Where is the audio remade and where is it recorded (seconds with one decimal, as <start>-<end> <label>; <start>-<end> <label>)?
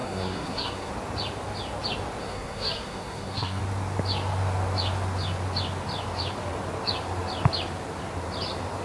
0.0-0.9 remade; 0.9-2.2 recorded; 2.2-3.6 remade; 3.6-8.8 recorded